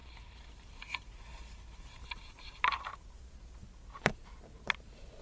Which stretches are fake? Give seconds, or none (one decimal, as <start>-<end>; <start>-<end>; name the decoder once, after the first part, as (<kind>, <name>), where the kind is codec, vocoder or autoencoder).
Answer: 0.0-3.1 (vocoder, BigVGAN v2)